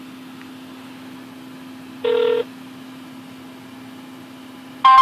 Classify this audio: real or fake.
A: real